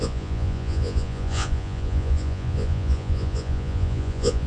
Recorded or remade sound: remade